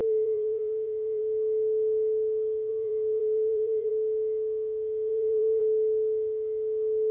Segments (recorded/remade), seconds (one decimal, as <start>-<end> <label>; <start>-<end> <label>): 0.0-1.2 remade; 1.2-2.7 recorded; 2.7-3.9 remade; 3.9-5.1 recorded; 5.1-5.6 remade; 5.6-7.1 recorded